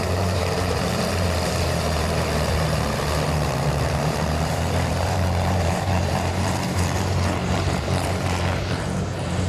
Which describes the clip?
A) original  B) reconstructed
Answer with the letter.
B